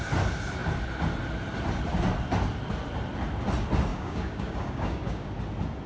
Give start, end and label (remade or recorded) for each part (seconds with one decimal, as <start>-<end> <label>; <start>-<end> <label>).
0.0-3.9 recorded; 3.9-5.3 remade; 5.3-5.9 recorded

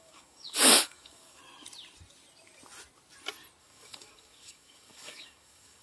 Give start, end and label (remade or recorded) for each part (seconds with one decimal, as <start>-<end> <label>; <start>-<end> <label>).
0.0-1.4 remade; 1.4-3.6 recorded; 3.6-5.8 remade